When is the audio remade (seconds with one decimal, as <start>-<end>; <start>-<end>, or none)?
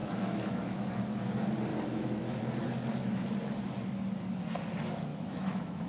0.0-0.9; 1.7-2.4; 5.1-5.9